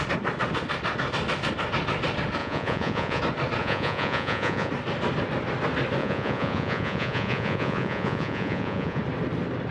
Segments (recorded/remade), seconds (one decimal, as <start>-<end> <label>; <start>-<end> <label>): 0.0-2.4 recorded; 2.4-3.2 remade; 3.2-3.6 recorded; 3.6-4.7 remade; 4.7-6.0 recorded; 6.0-9.0 remade; 9.0-9.7 recorded